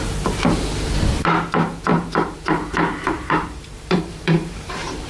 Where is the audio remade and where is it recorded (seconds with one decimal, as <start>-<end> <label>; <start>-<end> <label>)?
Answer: 0.0-1.9 recorded; 1.9-5.1 remade